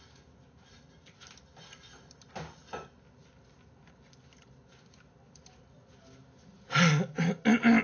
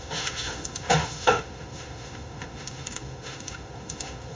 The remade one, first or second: second